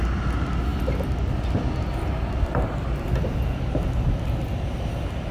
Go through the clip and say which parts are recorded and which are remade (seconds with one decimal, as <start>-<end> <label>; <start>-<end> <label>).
0.0-5.3 recorded